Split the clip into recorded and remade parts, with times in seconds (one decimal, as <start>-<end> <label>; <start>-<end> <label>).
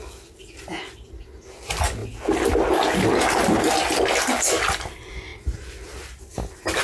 0.0-6.8 recorded